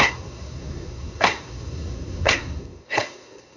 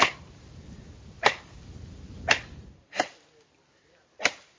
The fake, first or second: first